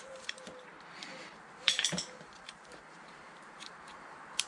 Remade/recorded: remade